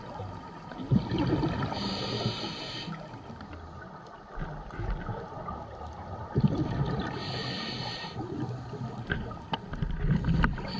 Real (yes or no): yes